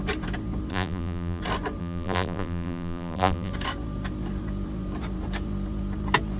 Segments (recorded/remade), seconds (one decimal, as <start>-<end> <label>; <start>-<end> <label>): 0.0-0.7 recorded; 0.7-1.4 remade; 1.4-1.8 recorded; 1.8-3.5 remade; 3.5-6.4 recorded